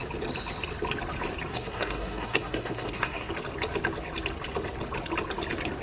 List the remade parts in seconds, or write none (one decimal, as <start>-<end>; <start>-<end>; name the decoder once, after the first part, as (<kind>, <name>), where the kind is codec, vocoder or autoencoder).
1.5-3.3 (codec, SNAC)

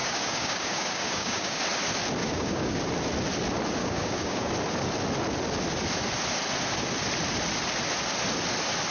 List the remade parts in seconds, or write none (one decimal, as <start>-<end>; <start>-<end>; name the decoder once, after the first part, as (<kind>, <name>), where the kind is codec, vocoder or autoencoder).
0.0-1.6 (codec, DAC); 2.2-2.7; 3.8-4.5

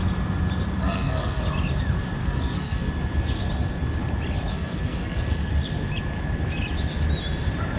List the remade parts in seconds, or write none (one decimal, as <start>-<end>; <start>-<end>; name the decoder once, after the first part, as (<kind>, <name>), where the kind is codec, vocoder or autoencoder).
0.8-1.4 (codec, SNAC); 2.2-2.9; 4.5-5.5

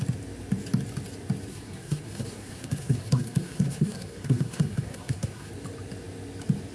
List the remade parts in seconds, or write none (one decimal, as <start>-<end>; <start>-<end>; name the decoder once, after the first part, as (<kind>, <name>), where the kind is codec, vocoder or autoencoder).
1.5-5.5 (codec, SNAC)